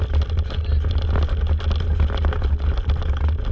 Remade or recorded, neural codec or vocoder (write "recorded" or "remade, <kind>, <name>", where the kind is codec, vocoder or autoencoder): recorded